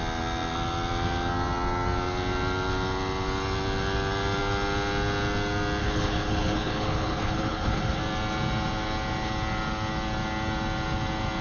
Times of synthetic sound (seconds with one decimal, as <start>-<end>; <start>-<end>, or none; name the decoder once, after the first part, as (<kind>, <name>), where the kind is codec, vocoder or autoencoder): 5.8-8.0 (codec, HILCodec)